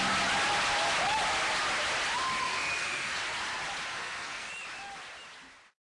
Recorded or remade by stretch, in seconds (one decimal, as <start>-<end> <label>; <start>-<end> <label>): 0.0-2.4 recorded; 2.4-3.2 remade; 3.2-3.9 recorded; 3.9-4.5 remade; 4.5-5.9 recorded